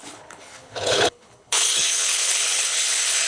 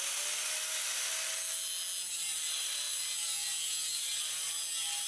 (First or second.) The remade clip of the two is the first